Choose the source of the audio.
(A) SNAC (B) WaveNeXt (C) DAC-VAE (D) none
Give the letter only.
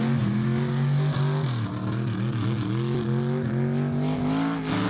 D